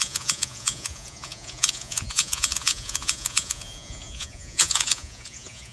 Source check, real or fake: fake